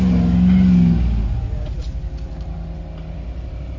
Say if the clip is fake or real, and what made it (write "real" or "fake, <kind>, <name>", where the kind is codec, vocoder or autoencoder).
real